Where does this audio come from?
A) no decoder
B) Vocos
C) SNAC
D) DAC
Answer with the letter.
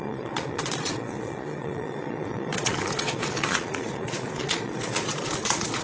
B